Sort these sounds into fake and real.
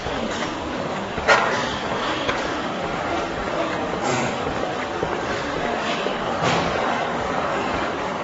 fake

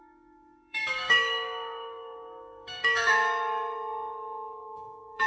fake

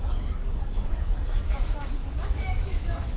fake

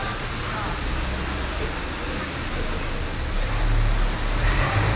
real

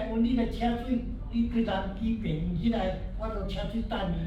fake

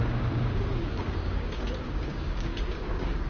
fake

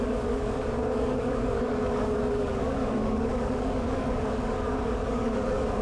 fake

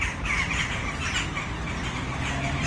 real